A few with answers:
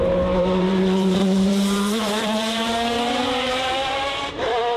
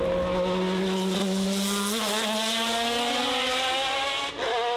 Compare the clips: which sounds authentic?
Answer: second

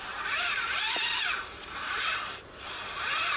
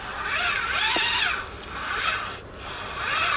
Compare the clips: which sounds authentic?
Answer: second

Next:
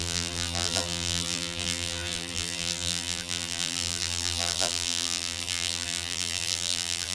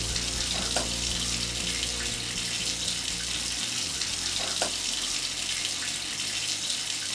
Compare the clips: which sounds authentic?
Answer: second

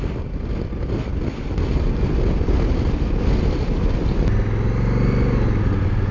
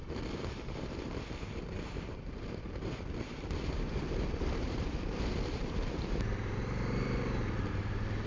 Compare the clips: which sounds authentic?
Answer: first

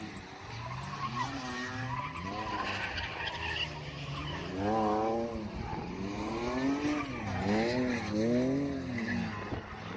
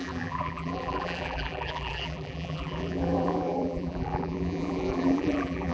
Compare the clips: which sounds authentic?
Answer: first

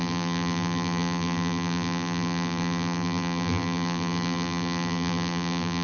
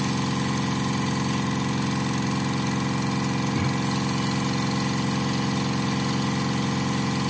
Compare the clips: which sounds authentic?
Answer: second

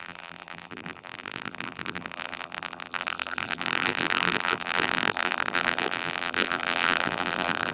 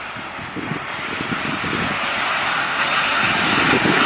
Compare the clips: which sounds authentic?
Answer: second